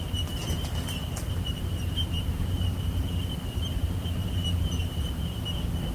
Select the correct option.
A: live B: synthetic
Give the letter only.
B